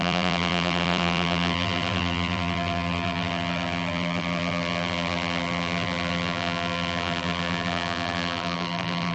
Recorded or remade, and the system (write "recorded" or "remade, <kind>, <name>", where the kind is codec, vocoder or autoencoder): remade, vocoder, BigVGAN v2